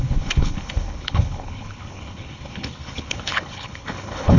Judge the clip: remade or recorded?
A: remade